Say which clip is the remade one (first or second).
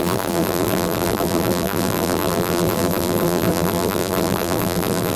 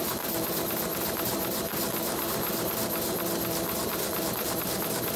first